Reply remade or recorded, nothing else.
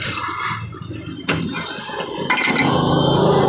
recorded